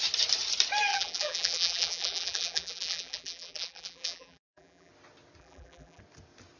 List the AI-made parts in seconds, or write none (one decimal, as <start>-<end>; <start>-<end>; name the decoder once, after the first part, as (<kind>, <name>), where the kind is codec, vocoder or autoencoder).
0.9-4.9 (vocoder, BigVGAN v2); 5.4-6.0